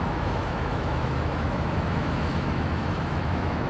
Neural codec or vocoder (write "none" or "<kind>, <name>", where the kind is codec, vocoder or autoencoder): autoencoder, DAC-VAE